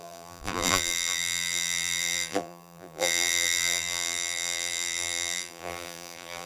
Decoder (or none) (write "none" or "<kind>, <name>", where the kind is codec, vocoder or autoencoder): vocoder, BigVGAN v2